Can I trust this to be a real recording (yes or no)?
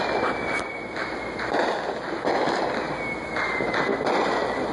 yes